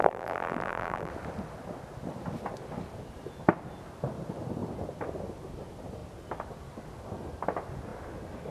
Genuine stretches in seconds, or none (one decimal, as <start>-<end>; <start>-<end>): 1.1-8.5